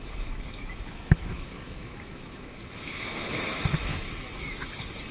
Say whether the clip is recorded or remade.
remade